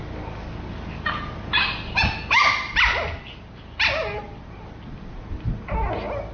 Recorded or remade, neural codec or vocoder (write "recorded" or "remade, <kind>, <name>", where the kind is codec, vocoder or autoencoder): recorded